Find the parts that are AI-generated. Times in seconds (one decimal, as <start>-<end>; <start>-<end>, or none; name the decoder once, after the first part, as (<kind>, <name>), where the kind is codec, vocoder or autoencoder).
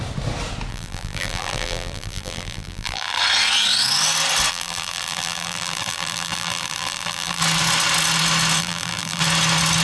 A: 0.7-3.2 (vocoder, BigVGAN v2); 4.5-7.4; 8.6-9.2